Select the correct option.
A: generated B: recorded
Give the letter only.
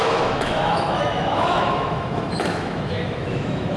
A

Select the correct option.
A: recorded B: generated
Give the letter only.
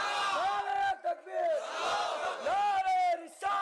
A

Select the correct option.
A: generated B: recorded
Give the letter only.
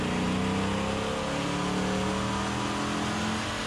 B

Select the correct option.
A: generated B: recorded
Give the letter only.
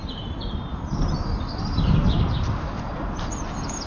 B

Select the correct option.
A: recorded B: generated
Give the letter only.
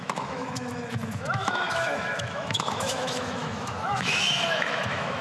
B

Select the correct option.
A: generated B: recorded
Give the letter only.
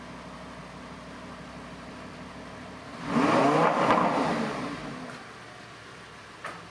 B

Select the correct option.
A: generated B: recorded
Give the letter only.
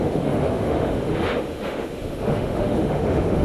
A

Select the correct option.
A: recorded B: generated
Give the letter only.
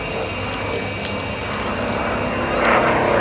A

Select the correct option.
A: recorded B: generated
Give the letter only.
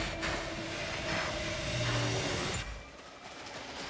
A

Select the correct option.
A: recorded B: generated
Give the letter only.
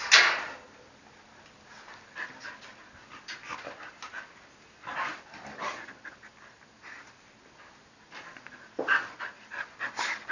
A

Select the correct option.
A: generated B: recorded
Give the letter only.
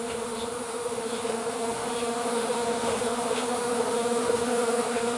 A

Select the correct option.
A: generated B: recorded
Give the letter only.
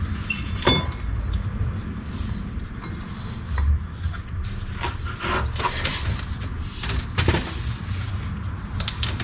B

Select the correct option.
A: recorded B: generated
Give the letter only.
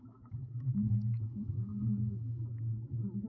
B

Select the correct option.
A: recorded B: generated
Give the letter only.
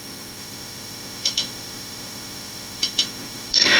B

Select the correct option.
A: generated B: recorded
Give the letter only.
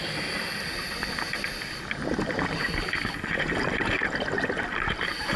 B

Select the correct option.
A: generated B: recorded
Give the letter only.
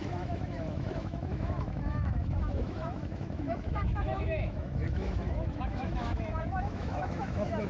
A